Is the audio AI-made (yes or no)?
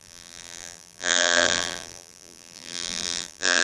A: yes